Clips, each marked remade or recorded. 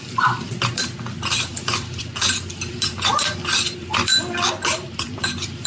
remade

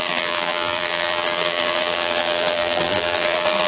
remade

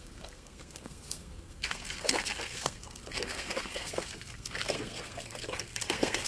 remade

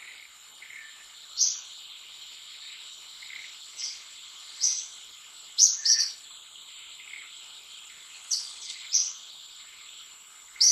remade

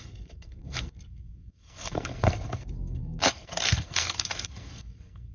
remade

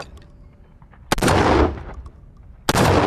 recorded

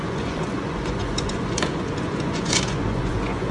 remade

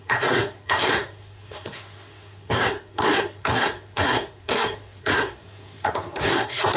remade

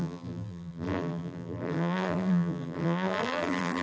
remade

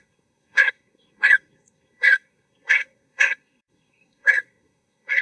remade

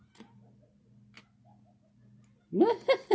recorded